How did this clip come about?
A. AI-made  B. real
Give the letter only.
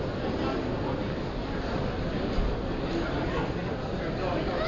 B